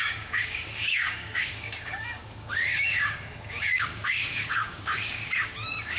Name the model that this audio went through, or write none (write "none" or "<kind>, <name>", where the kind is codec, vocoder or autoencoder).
codec, DAC